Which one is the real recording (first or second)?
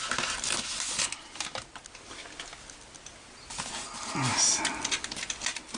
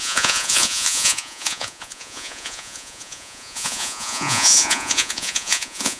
first